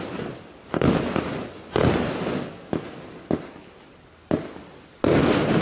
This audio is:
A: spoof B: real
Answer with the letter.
B